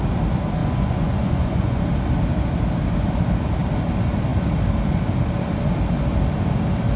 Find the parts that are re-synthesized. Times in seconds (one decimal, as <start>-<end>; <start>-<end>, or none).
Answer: 0.6-1.8